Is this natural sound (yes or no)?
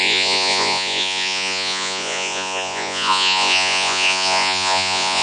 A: no